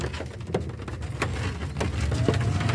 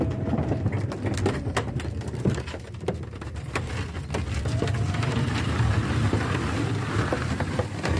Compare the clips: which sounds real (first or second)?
first